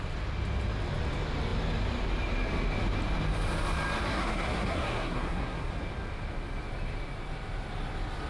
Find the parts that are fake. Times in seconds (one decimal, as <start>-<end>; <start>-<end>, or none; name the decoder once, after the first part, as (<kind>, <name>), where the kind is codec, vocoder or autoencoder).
4.1-5.7 (codec, SNAC)